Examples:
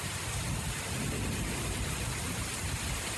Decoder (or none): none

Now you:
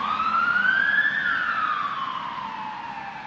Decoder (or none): none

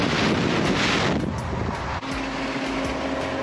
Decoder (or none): none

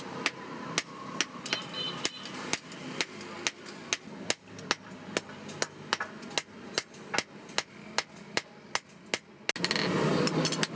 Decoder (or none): none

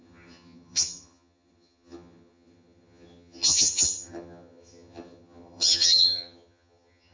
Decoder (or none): vocoder, HiFi-GAN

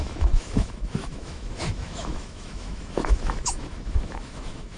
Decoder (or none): autoencoder, DAC-VAE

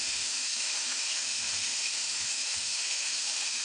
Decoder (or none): autoencoder, DAC-VAE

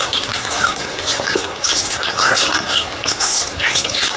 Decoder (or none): codec, SNAC